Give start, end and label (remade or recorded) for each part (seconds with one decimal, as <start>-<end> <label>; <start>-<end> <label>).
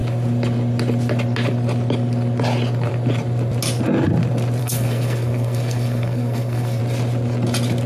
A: 0.0-4.6 recorded; 4.6-6.8 remade; 6.8-7.9 recorded